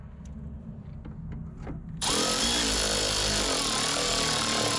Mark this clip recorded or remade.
recorded